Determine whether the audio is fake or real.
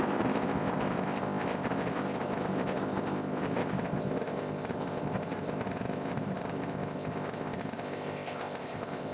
fake